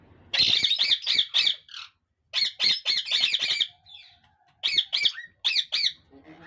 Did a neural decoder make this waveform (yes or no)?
no